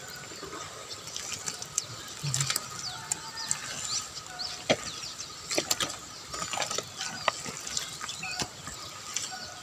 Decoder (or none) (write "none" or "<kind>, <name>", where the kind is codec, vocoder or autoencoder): none